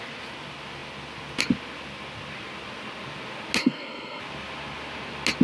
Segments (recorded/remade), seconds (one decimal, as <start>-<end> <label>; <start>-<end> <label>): 0.0-3.6 recorded; 3.6-4.2 remade; 4.2-5.4 recorded